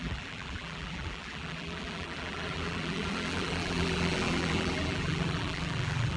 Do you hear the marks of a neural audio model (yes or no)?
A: yes